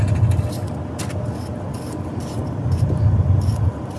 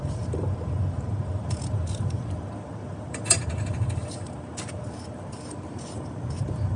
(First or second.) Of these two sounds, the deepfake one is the second